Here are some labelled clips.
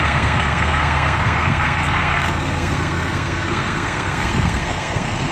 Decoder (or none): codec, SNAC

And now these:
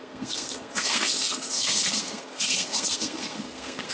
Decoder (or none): codec, SNAC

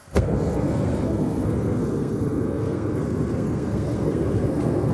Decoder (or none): codec, SNAC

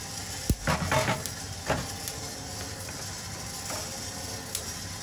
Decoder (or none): none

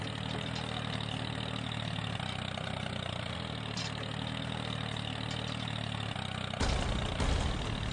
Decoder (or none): none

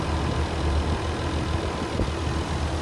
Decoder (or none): none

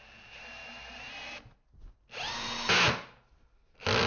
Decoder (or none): none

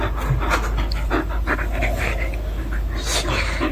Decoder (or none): none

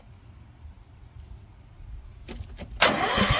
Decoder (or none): none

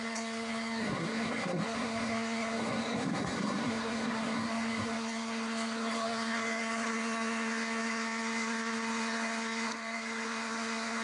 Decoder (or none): codec, SNAC